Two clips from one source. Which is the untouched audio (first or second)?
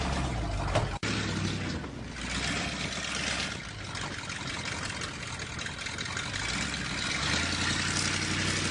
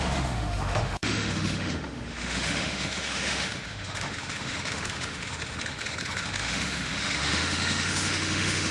first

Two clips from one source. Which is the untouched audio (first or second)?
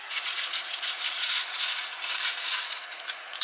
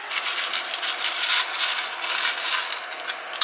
second